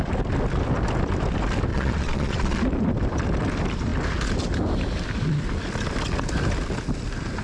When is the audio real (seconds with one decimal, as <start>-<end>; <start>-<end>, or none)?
0.0-1.7; 2.6-7.4